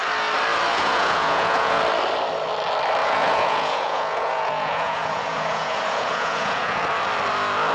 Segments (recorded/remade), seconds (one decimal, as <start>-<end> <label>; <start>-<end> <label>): 0.0-0.7 recorded; 0.7-1.8 remade; 1.8-3.0 recorded; 3.0-6.8 remade; 6.8-7.7 recorded